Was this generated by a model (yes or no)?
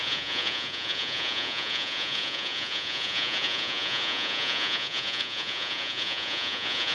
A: yes